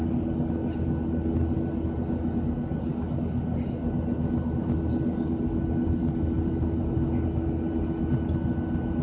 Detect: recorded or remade recorded